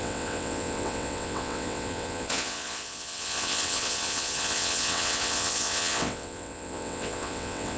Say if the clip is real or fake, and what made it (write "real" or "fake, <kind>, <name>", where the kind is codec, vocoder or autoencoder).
fake, vocoder, WaveNeXt